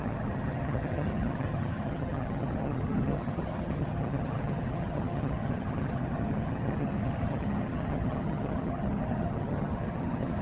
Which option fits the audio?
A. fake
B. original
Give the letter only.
A